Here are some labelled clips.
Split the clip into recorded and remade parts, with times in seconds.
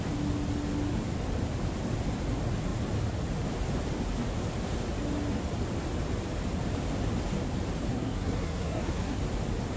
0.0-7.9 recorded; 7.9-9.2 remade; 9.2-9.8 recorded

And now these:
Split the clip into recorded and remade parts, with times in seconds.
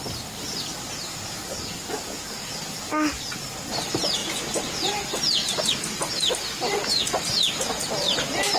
0.0-8.6 recorded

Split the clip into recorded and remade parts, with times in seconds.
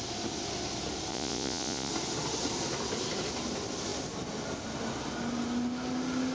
0.0-1.1 recorded; 1.1-1.9 remade; 1.9-6.3 recorded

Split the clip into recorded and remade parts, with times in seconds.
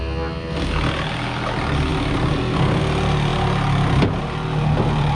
0.0-5.1 recorded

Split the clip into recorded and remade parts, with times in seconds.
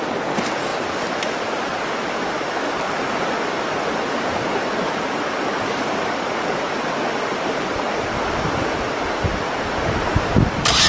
0.0-10.9 recorded